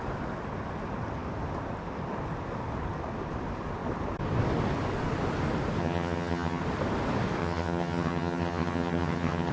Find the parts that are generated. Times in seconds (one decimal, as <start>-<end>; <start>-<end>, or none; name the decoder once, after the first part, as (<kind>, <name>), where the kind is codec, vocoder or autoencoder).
5.8-6.6 (vocoder, HiFi-GAN); 7.4-9.5